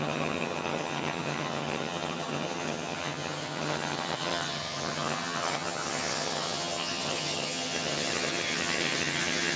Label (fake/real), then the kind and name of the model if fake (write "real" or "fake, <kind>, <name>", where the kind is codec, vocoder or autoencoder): fake, vocoder, HiFi-GAN